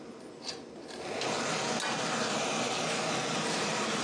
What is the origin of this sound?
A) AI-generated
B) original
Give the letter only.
B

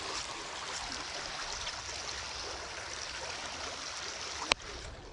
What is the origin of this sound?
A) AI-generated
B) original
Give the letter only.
B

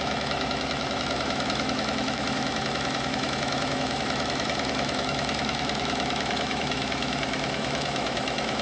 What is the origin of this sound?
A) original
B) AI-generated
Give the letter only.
B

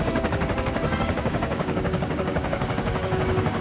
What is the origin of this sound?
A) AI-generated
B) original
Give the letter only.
A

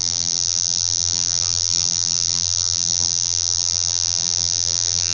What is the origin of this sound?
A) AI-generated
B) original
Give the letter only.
A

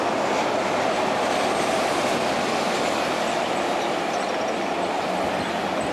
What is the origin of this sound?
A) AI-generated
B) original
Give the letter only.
B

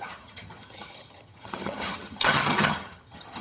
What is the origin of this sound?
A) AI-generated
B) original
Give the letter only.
A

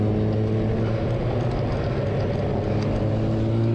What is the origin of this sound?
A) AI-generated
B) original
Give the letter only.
B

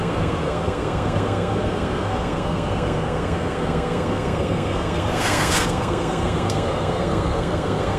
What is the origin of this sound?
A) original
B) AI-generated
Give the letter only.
B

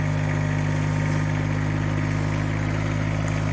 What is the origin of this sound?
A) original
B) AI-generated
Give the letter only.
A